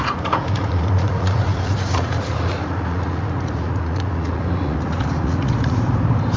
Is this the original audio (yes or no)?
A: no